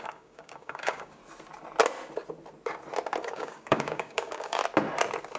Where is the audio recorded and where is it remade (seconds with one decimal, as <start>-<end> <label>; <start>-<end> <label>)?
0.0-1.2 remade; 1.2-3.2 recorded; 3.2-4.6 remade; 4.6-5.4 recorded